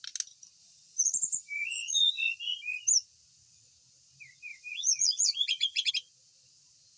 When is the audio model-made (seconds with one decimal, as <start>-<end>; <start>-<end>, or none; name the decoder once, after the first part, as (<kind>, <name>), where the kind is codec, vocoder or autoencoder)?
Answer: 0.6-2.4 (vocoder, Vocos); 4.5-5.9